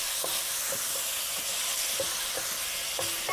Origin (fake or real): real